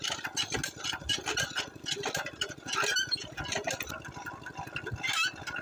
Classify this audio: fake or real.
real